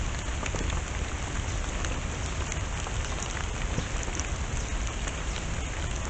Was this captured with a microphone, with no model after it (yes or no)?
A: yes